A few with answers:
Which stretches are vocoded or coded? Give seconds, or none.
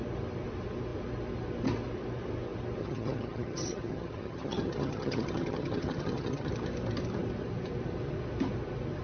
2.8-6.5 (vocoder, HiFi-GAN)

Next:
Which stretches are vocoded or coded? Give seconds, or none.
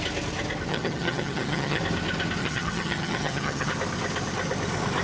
0.7-1.8 (vocoder, HiFi-GAN); 2.4-3.7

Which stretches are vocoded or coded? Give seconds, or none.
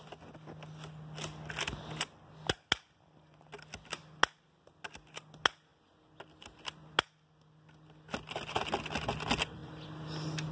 none